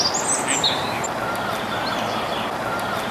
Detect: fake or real real